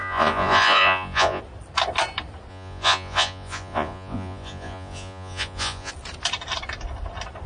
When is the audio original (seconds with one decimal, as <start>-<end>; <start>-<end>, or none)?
1.4-2.5; 5.9-7.5